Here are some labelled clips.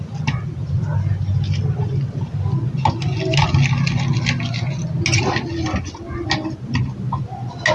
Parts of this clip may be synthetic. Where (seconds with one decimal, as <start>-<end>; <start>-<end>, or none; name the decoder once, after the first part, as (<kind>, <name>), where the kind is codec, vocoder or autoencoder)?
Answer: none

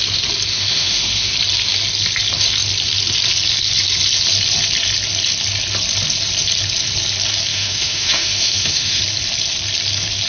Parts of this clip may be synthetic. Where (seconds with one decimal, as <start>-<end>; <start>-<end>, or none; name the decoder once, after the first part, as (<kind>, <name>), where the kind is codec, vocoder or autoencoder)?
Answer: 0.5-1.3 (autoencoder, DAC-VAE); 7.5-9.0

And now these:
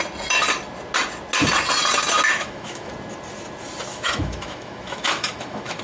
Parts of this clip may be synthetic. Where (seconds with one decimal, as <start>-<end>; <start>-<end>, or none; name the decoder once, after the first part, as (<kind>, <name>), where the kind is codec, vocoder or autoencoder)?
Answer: 2.3-2.9 (autoencoder, DAC-VAE); 3.9-5.8

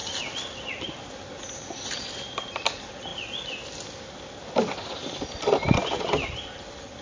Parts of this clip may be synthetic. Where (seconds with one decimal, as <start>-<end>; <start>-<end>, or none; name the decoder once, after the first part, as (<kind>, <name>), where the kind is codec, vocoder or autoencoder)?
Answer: none

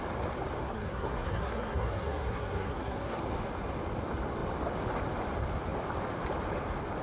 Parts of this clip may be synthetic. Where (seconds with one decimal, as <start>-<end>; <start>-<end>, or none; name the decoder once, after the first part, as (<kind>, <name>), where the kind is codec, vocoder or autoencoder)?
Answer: 0.6-3.2 (codec, SNAC)

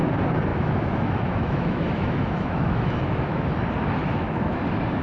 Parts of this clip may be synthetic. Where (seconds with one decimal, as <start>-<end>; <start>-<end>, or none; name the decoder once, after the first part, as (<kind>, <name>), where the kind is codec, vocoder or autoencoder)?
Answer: 0.5-3.5 (autoencoder, DAC-VAE); 4.0-4.6